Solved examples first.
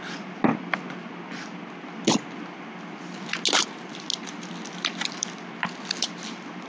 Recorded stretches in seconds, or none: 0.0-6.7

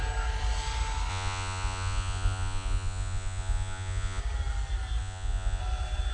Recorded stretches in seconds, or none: 0.0-1.1; 4.2-5.0; 5.6-6.1

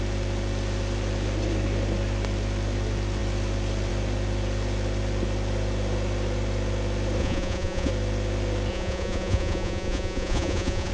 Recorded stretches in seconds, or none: 0.0-7.2; 7.9-8.7

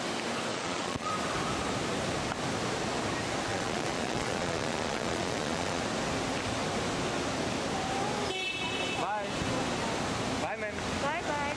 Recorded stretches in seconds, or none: 0.0-0.5; 1.1-3.5; 5.8-11.6

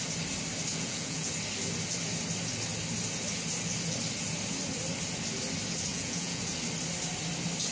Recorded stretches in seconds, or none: 0.0-0.7; 1.3-5.9; 6.4-7.7

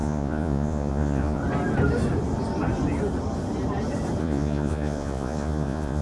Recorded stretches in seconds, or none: 1.4-4.2

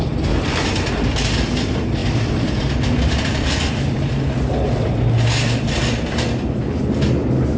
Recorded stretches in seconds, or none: 0.0-7.6

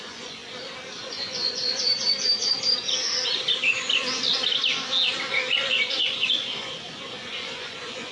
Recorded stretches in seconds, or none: 0.4-1.0; 1.8-5.6